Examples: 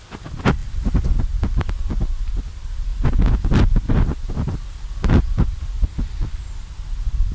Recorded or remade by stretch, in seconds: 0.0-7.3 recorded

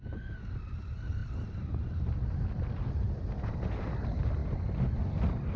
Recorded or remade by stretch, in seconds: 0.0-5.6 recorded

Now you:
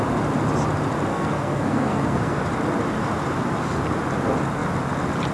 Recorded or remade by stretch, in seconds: 0.0-1.1 recorded; 1.1-2.4 remade; 2.4-5.3 recorded

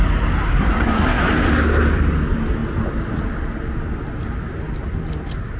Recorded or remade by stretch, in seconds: 0.0-0.5 recorded; 0.5-1.2 remade; 1.2-5.6 recorded

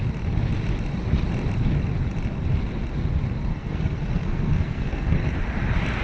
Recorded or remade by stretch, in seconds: 0.0-3.5 recorded; 3.5-5.3 remade; 5.3-6.0 recorded

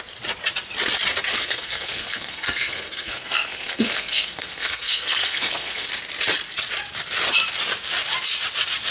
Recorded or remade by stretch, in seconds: 0.0-1.3 recorded; 1.3-5.9 remade; 5.9-8.9 recorded